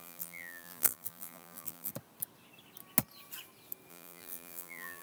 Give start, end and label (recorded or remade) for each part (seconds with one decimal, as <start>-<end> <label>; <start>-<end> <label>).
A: 0.0-1.9 remade; 1.9-3.9 recorded; 3.9-5.0 remade